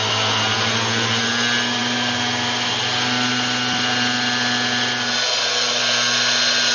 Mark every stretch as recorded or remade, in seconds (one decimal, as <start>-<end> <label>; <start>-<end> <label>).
0.0-6.7 recorded